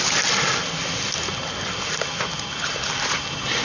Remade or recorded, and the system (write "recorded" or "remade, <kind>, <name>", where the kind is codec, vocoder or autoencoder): recorded